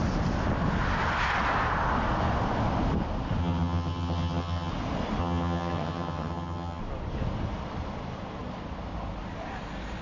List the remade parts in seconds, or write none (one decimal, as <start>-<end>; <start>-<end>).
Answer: 3.4-4.7; 5.2-6.8